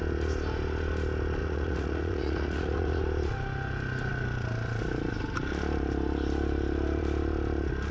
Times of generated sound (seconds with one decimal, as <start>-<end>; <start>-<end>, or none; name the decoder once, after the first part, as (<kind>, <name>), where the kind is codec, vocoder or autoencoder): 1.4-3.0 (vocoder, Vocos)